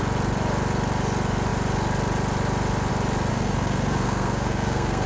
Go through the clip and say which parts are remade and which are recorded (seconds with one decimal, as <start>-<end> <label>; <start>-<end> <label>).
0.0-3.3 recorded; 3.3-5.1 remade